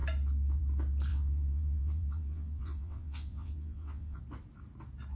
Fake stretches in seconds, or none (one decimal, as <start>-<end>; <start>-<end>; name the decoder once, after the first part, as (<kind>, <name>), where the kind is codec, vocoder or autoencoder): 1.1-4.2 (vocoder, WaveNeXt)